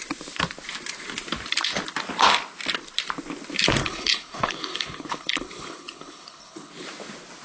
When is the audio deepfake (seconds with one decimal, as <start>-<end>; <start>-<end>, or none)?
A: 3.8-6.7